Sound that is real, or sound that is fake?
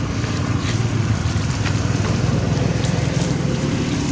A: fake